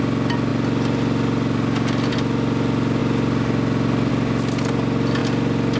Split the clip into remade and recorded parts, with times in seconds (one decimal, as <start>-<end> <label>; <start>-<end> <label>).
0.0-0.5 recorded; 0.5-2.1 remade; 2.1-5.2 recorded; 5.2-5.8 remade